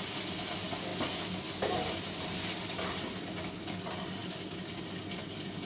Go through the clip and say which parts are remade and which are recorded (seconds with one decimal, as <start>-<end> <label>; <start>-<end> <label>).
0.0-5.7 recorded